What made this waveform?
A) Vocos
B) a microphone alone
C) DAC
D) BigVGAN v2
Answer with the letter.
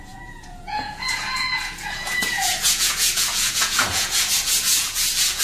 A